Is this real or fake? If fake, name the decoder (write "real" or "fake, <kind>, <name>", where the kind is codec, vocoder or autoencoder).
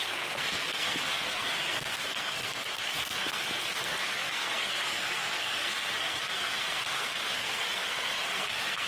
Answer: fake, codec, SNAC